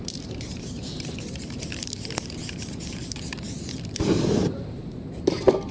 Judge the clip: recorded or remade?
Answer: remade